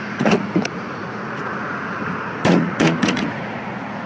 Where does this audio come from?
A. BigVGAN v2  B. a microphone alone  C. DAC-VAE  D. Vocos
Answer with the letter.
D